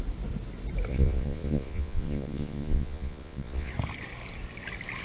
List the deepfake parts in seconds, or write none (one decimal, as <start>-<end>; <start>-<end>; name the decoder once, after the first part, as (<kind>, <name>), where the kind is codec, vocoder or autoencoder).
0.9-3.7 (vocoder, Vocos)